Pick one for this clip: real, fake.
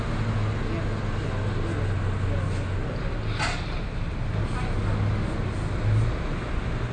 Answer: real